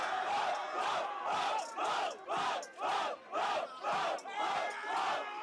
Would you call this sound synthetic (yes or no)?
no